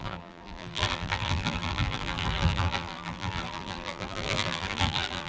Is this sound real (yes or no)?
no